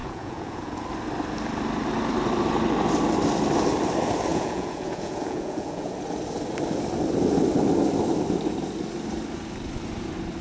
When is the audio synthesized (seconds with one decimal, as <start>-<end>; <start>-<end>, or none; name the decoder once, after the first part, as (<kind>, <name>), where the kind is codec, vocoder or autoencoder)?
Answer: 0.0-0.8 (vocoder, Vocos); 4.3-5.9